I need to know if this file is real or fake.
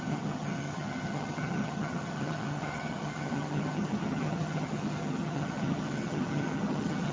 fake